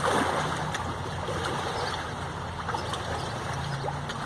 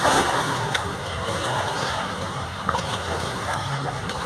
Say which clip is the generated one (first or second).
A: second